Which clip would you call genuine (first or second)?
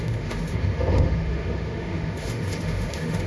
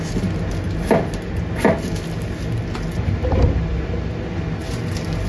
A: second